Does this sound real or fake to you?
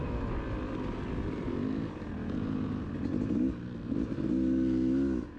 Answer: real